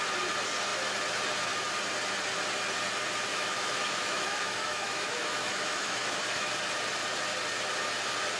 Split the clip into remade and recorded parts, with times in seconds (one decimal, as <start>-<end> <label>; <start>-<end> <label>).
0.0-3.3 recorded; 3.3-6.5 remade; 6.5-8.4 recorded